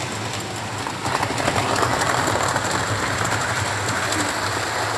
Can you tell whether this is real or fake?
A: real